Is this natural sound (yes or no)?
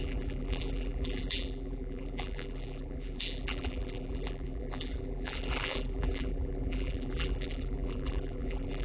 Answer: no